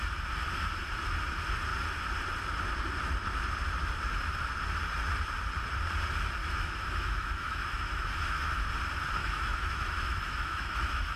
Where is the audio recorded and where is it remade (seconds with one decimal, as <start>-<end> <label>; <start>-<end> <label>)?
0.0-6.4 recorded; 6.4-8.7 remade; 8.7-9.2 recorded; 9.2-11.2 remade